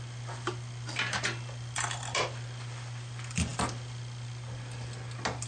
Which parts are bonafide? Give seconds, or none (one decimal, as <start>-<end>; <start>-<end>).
0.0-5.5